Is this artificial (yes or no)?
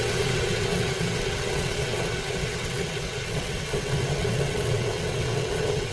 yes